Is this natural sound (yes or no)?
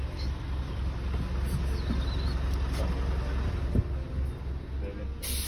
yes